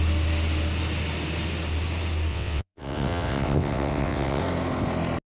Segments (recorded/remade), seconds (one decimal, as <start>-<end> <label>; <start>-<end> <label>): 0.0-2.3 recorded; 2.3-4.4 remade; 4.4-5.3 recorded